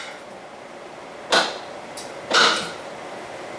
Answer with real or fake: real